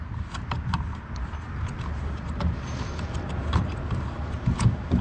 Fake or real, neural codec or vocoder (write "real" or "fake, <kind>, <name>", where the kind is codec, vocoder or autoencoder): real